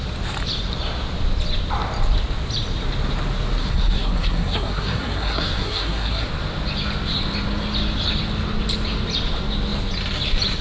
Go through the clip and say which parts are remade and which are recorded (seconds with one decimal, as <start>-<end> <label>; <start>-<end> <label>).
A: 0.0-3.6 recorded; 3.6-6.3 remade; 6.3-10.6 recorded

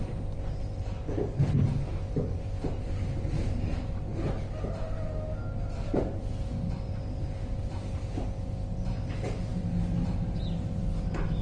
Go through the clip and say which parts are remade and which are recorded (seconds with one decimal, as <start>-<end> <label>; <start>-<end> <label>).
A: 0.0-11.4 recorded

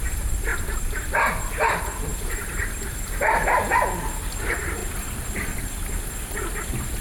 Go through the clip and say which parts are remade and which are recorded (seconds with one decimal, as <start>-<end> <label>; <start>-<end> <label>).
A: 0.0-0.5 recorded; 0.5-1.4 remade; 1.4-2.1 recorded; 2.1-3.5 remade; 3.5-4.8 recorded; 4.8-5.6 remade; 5.6-7.0 recorded

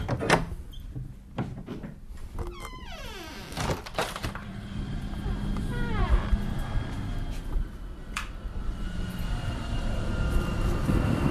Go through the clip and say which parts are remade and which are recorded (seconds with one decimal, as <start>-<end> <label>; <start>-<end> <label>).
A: 0.0-4.0 recorded; 4.0-6.2 remade; 6.2-8.0 recorded; 8.0-10.1 remade; 10.1-11.3 recorded

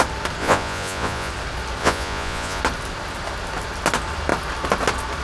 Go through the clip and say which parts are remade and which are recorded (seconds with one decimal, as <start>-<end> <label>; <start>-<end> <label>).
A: 0.0-0.4 recorded; 0.4-1.3 remade; 1.3-1.8 recorded; 1.8-2.6 remade; 2.6-5.2 recorded

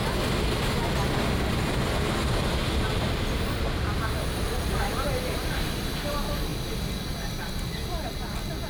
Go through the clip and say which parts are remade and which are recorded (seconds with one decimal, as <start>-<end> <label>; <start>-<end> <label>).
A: 0.0-8.7 recorded

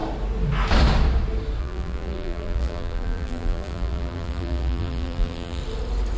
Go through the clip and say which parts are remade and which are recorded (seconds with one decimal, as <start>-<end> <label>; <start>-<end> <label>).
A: 0.0-1.6 recorded; 1.6-5.6 remade; 5.6-6.2 recorded